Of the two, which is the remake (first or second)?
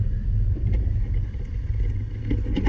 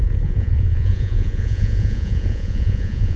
second